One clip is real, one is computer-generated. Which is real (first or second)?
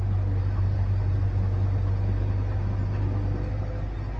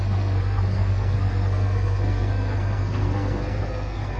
first